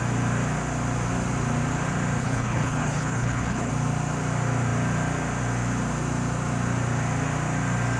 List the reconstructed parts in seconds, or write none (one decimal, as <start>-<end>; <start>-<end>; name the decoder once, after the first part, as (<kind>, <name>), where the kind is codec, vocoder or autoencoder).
2.2-3.7 (codec, HILCodec)